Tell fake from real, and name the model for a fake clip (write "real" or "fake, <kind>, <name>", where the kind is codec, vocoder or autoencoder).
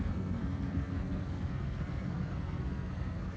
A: fake, codec, SNAC